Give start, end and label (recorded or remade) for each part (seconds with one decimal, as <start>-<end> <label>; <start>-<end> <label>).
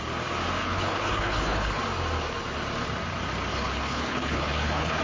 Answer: 0.0-0.6 recorded; 0.6-1.8 remade; 1.8-3.5 recorded; 3.5-5.0 remade